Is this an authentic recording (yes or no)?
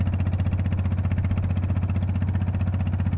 yes